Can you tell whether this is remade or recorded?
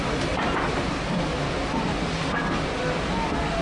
recorded